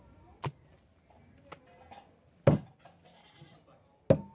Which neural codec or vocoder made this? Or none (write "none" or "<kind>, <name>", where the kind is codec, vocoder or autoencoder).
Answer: none